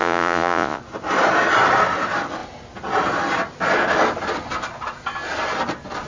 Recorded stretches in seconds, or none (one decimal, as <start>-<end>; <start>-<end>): 0.8-6.1